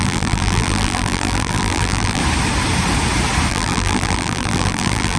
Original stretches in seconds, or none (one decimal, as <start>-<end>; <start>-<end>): 2.2-3.5